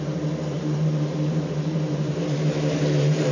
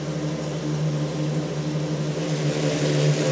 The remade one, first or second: first